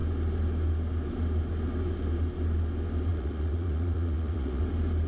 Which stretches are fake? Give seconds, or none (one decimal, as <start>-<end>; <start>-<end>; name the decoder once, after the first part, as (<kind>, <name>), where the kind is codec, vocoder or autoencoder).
3.1-4.6 (vocoder, Vocos)